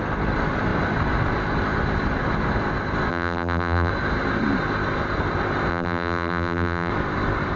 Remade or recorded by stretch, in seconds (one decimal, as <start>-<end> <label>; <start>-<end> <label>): 0.0-3.1 recorded; 3.1-3.9 remade; 3.9-5.7 recorded; 5.7-6.9 remade; 6.9-7.6 recorded